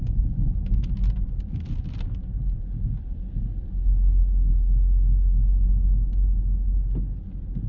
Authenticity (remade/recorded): recorded